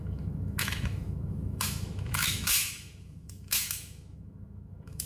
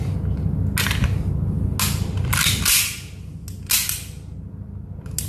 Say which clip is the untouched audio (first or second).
second